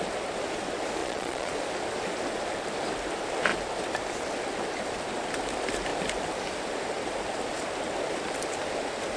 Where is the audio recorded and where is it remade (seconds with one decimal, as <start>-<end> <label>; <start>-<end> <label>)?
0.0-1.0 recorded; 1.0-1.5 remade; 1.5-9.2 recorded